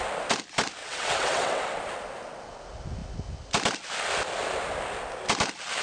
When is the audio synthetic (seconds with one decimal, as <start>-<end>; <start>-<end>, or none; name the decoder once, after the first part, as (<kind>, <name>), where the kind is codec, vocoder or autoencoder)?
0.8-1.8 (vocoder, WaveNeXt)